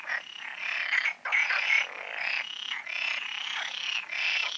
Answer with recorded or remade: recorded